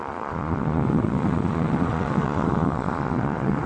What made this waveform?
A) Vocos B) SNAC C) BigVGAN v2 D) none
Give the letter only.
A